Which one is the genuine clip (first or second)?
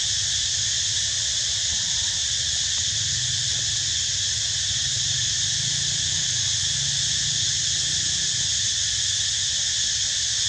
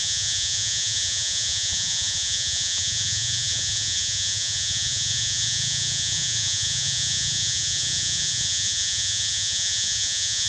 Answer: first